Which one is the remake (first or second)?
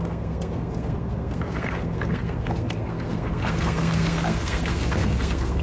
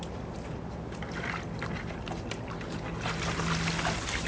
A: first